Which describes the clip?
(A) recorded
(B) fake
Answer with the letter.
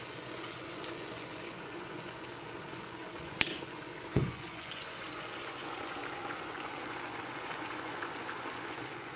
B